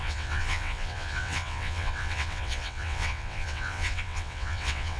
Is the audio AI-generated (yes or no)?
yes